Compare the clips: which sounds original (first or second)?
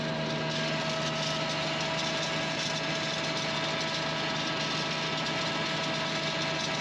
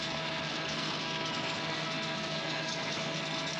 first